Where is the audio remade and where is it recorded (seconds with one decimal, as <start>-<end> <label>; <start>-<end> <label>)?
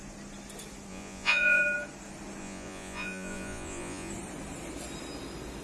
0.0-0.9 recorded; 0.9-1.6 remade; 1.6-2.4 recorded; 2.4-4.1 remade; 4.1-5.6 recorded